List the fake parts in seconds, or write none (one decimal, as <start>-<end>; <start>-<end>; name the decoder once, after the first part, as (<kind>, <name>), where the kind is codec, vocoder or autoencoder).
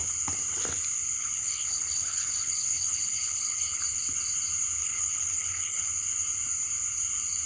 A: 1.2-3.8 (codec, HILCodec); 4.8-5.9